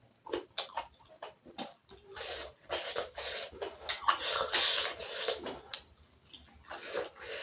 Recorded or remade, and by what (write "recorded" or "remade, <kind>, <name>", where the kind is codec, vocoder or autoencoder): recorded